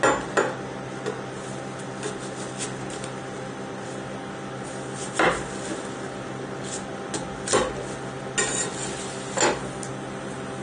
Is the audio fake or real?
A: real